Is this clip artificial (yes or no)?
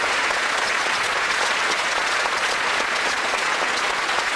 yes